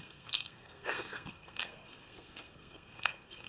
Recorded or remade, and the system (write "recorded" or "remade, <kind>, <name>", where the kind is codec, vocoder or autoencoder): remade, codec, SNAC